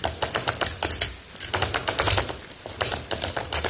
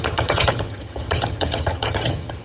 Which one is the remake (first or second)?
second